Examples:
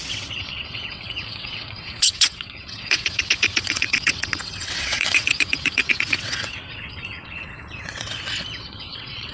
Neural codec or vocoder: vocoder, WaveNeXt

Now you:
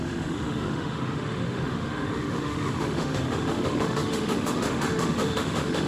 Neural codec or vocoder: autoencoder, DAC-VAE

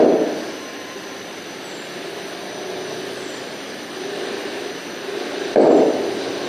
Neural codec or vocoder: none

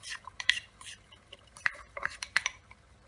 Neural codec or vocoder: vocoder, BigVGAN v2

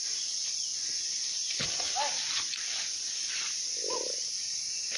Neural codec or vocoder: none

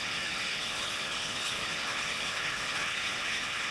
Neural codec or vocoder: codec, HILCodec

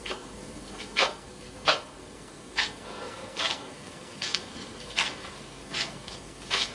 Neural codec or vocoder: codec, SNAC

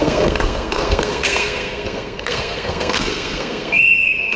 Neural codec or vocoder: codec, SNAC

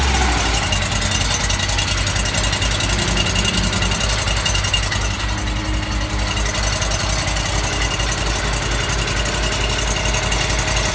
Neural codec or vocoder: none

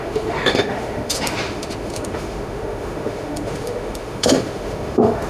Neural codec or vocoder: autoencoder, DAC-VAE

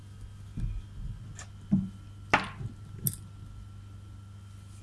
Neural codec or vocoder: none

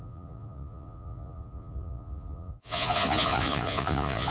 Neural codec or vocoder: vocoder, Vocos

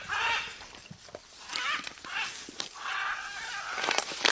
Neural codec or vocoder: none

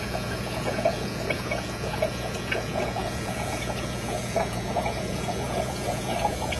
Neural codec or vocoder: vocoder, Vocos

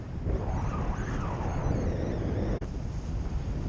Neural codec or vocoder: none